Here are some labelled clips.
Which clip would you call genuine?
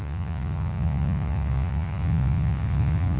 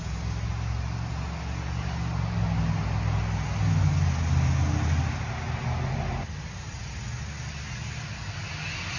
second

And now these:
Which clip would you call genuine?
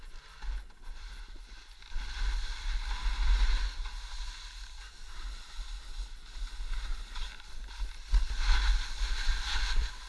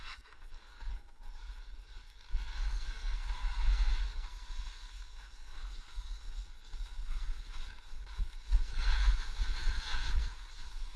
first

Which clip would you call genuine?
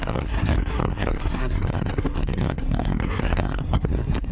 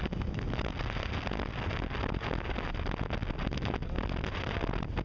second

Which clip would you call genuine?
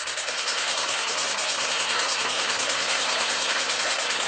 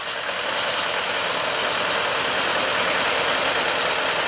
second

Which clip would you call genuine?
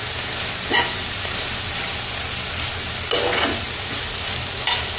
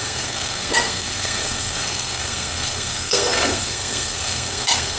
first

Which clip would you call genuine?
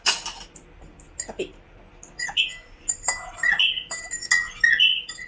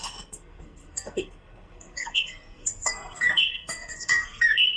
first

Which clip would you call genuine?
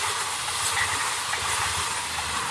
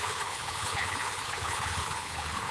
first